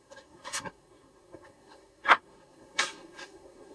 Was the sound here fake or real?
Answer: fake